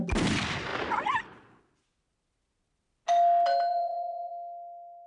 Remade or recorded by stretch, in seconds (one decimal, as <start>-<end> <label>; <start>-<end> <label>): 0.0-3.7 recorded; 3.7-4.3 remade; 4.3-5.1 recorded

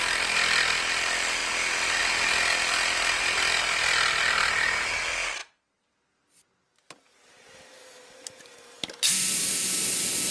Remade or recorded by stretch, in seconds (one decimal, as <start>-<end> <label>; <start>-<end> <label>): 0.0-10.3 recorded

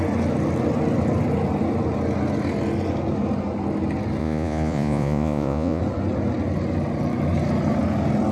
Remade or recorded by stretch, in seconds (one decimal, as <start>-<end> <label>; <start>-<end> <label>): 0.0-4.2 recorded; 4.2-5.8 remade; 5.8-8.3 recorded

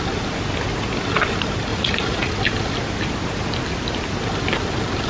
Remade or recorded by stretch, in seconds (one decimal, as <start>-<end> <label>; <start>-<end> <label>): 0.0-1.7 recorded; 1.7-2.3 remade; 2.3-5.1 recorded